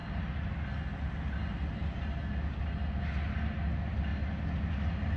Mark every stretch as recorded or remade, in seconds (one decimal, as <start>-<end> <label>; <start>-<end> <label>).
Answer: 0.0-5.2 recorded